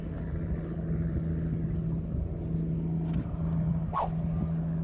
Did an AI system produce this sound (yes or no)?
no